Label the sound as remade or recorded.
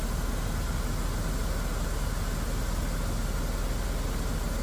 recorded